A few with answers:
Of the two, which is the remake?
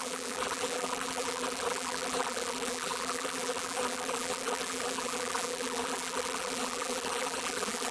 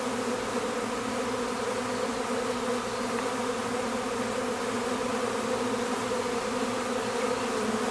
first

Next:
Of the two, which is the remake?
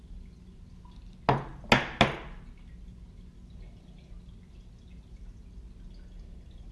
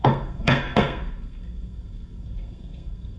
second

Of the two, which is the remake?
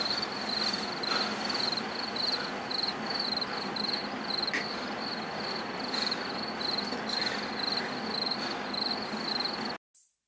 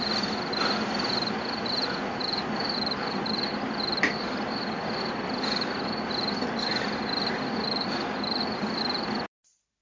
second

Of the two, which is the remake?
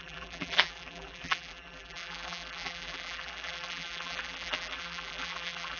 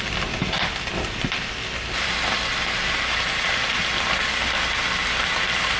first